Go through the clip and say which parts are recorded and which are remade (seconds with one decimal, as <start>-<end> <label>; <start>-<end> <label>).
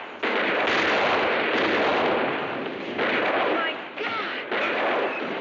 0.0-5.4 recorded